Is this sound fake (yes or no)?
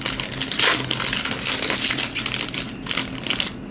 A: no